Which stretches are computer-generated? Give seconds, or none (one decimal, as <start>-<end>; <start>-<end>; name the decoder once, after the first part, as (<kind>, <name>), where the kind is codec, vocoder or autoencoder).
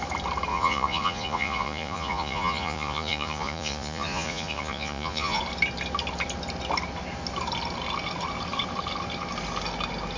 0.5-5.4 (vocoder, Vocos)